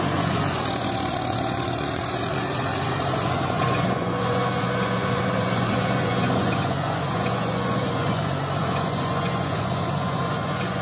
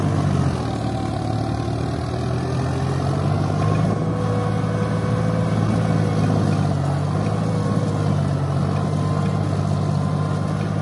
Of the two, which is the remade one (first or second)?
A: first